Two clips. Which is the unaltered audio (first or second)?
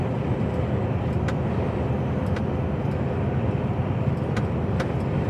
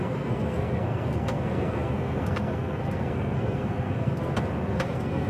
first